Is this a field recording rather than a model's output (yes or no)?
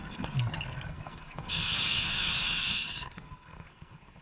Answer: no